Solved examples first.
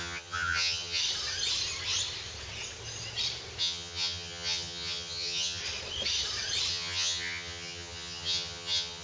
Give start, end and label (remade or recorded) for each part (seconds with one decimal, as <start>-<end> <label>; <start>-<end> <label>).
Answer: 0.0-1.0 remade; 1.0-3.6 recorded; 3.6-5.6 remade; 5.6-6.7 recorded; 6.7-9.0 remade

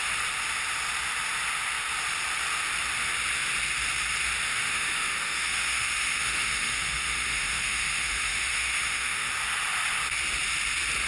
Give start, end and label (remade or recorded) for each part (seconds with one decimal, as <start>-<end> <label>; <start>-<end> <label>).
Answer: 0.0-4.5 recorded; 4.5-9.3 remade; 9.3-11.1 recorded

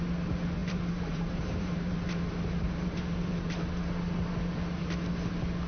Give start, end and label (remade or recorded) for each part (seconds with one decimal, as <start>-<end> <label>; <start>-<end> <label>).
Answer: 0.0-0.6 recorded; 0.6-3.7 remade; 3.7-5.7 recorded

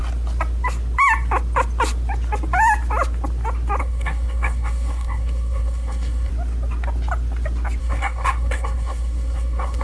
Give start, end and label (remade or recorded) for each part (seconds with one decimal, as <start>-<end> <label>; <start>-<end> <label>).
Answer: 0.0-3.8 recorded; 3.8-6.3 remade; 6.3-7.8 recorded; 7.8-9.8 remade